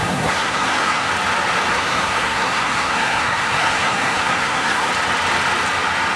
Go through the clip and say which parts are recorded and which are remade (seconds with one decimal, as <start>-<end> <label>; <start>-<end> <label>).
0.0-1.1 remade; 1.1-1.7 recorded; 1.7-4.9 remade; 4.9-6.2 recorded